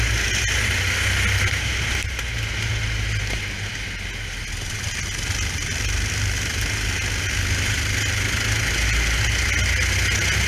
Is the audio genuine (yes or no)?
yes